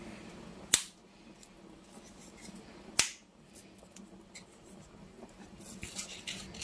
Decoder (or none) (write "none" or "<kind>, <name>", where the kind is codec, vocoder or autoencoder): none